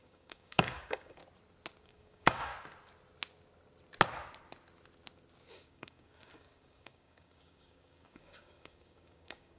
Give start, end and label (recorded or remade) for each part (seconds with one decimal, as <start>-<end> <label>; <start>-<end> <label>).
0.0-1.2 remade; 1.2-1.8 recorded; 1.8-2.5 remade; 2.5-5.5 recorded; 5.5-9.6 remade